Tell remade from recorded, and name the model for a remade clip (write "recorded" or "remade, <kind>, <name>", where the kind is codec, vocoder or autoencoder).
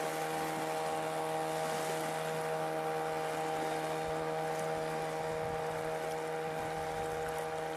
recorded